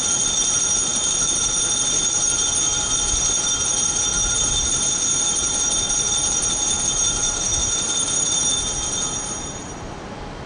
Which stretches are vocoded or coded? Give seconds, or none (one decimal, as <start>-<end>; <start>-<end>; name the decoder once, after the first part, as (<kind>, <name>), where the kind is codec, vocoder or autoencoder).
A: 7.2-8.5 (vocoder, BigVGAN v2)